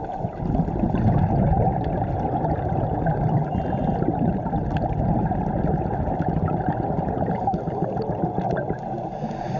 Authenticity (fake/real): real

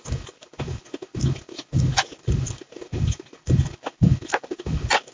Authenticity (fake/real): real